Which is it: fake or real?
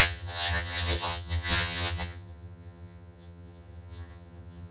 fake